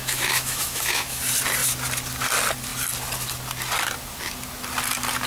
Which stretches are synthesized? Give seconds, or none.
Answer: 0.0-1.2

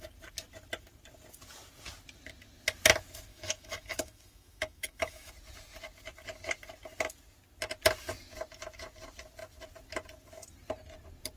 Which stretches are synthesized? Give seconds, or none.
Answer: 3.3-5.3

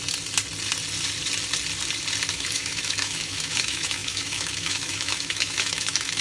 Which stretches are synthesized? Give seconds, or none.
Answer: 2.3-6.2

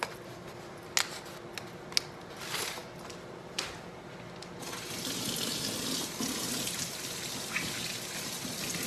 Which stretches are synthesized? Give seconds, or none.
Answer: none

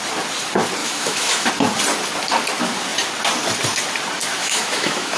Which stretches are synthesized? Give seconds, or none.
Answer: 0.8-1.5; 4.4-5.2